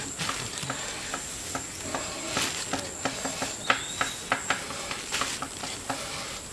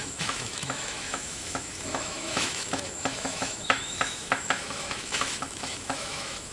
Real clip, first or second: first